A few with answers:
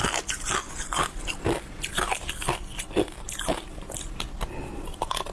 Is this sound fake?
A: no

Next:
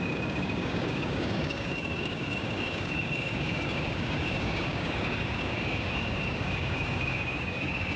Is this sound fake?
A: yes